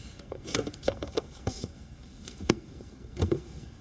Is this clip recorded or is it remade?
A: remade